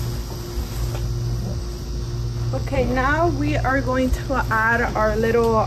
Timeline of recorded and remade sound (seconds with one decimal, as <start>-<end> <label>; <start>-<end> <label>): 0.0-5.7 recorded

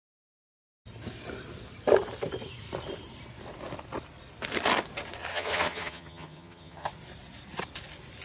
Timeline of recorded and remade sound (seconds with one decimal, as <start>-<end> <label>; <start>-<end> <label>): 0.0-5.3 recorded; 5.3-6.9 remade; 6.9-8.2 recorded

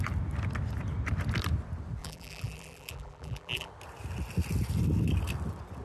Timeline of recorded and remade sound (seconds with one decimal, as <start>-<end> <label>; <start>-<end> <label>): 0.0-2.0 recorded; 2.0-3.7 remade; 3.7-5.8 recorded

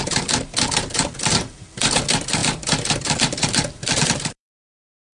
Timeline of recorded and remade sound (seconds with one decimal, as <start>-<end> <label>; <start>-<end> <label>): 0.0-2.4 remade; 2.4-3.0 recorded; 3.0-5.2 remade